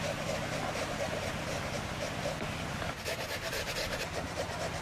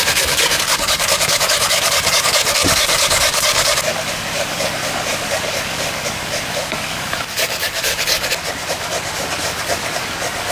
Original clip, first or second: first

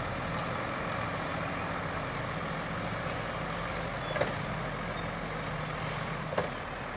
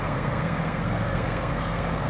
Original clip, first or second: first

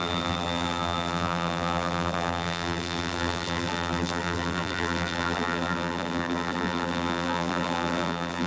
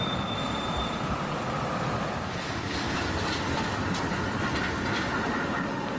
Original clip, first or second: second